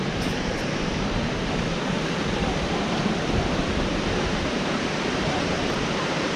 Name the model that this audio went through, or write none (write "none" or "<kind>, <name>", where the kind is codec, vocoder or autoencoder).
vocoder, BigVGAN v2